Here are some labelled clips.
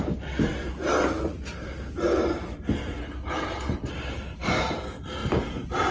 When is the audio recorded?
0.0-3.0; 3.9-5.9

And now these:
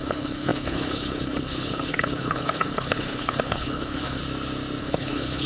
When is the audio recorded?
4.2-4.8

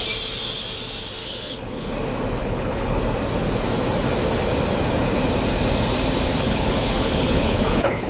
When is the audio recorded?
0.0-1.2; 1.9-2.4; 3.0-6.3

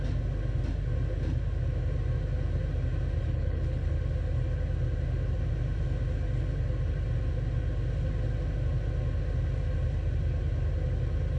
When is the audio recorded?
0.0-3.2; 3.9-11.4

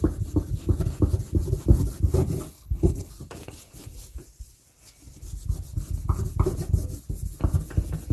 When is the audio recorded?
0.0-2.5; 3.1-8.1

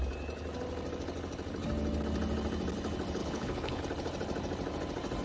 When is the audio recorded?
0.0-3.2; 3.8-5.2

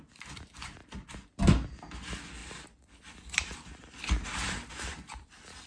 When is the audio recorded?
0.0-5.7